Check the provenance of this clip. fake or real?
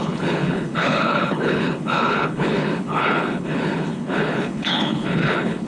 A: fake